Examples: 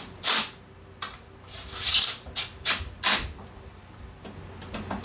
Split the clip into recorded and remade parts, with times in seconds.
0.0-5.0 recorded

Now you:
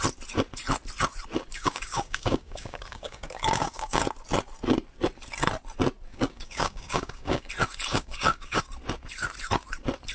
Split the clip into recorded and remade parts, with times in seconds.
0.0-1.5 recorded; 1.5-4.0 remade; 4.0-6.1 recorded; 6.1-7.5 remade; 7.5-7.9 recorded; 7.9-8.6 remade; 8.6-10.1 recorded

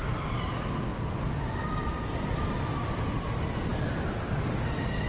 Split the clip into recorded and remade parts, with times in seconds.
0.0-5.1 recorded

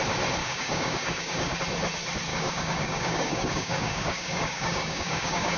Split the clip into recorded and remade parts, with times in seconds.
0.0-0.4 recorded; 0.4-1.6 remade; 1.6-2.3 recorded; 2.3-5.6 remade